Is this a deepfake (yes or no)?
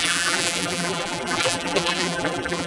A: yes